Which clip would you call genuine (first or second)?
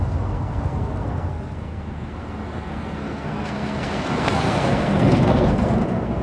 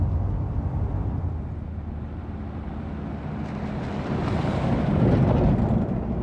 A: second